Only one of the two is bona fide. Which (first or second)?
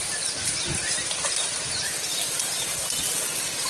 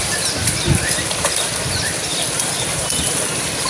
second